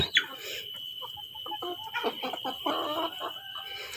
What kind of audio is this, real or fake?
real